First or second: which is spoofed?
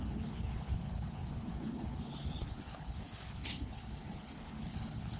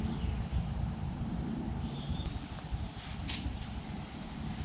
first